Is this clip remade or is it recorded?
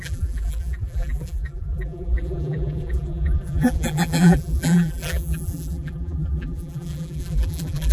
remade